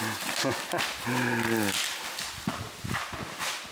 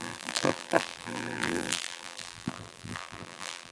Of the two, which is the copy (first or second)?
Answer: second